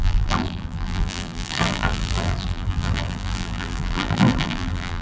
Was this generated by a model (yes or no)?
yes